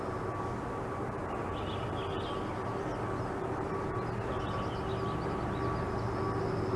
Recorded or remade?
recorded